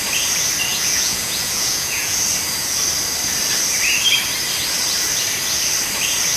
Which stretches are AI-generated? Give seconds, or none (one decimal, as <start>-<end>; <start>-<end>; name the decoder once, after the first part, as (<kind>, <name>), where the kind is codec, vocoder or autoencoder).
0.7-2.2 (vocoder, Vocos)